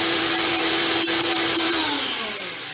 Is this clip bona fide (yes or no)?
no